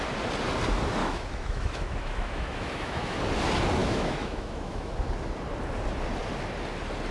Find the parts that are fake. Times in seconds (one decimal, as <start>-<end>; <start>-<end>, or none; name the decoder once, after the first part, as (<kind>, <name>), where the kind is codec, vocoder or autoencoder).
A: 1.0-3.2 (autoencoder, DAC-VAE); 3.8-4.9